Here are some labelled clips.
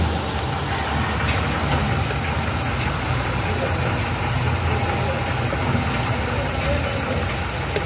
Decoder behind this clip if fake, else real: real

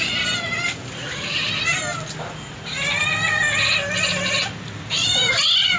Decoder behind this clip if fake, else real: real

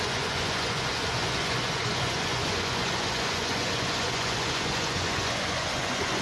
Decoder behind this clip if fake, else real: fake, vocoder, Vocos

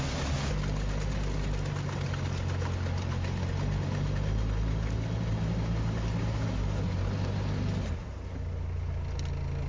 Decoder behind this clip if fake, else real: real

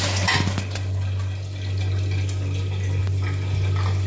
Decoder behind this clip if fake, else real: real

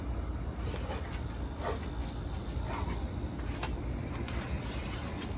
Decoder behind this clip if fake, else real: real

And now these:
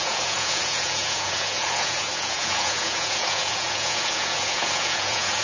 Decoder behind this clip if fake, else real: fake, vocoder, Vocos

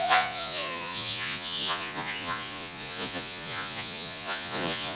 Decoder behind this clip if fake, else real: fake, vocoder, Vocos